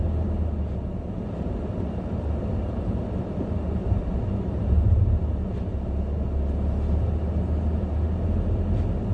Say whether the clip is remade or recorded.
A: recorded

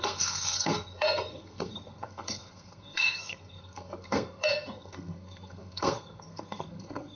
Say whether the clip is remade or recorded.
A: remade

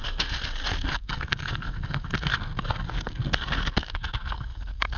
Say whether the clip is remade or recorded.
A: remade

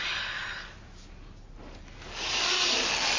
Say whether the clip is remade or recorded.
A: recorded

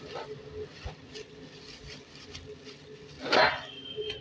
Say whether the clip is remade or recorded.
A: recorded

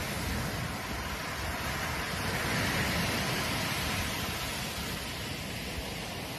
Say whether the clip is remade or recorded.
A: recorded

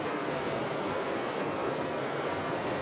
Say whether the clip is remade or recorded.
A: remade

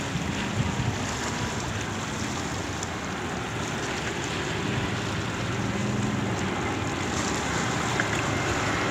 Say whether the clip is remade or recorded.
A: recorded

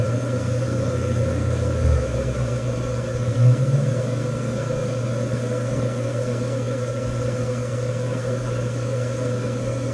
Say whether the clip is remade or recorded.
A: remade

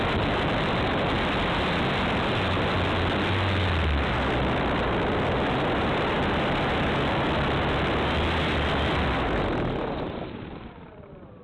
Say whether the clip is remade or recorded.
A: recorded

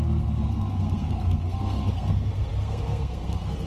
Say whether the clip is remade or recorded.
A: remade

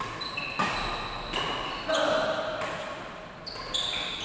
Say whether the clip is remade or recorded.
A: recorded